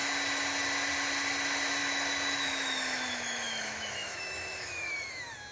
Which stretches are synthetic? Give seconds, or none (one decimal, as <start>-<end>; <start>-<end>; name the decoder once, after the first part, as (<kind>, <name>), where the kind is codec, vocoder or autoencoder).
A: 1.8-5.1 (autoencoder, DAC-VAE)